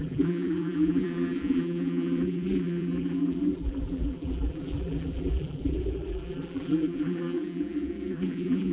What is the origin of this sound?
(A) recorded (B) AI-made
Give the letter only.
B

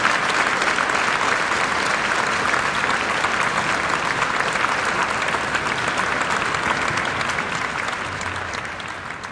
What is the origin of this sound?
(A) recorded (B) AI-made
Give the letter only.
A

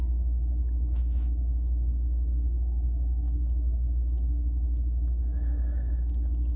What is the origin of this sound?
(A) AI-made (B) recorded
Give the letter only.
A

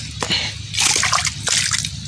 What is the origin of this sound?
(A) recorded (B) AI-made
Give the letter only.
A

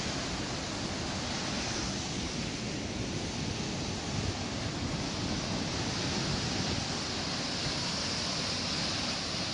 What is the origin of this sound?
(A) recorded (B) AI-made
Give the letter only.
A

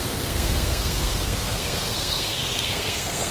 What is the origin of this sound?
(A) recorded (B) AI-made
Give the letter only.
B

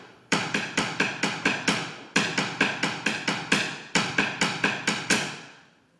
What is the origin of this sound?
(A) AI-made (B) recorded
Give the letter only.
A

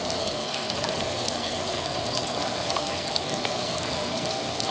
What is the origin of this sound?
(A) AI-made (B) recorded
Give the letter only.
A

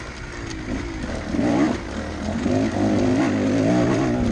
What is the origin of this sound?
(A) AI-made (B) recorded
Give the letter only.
B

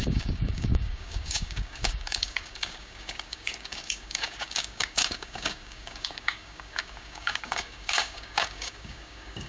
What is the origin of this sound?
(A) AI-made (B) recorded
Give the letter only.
A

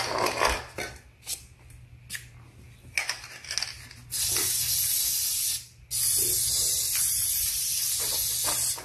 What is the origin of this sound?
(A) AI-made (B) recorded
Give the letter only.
B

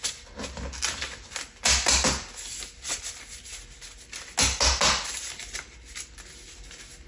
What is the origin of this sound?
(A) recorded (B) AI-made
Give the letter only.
A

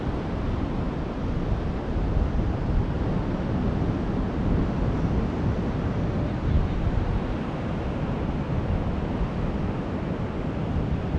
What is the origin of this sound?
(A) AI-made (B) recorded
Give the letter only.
B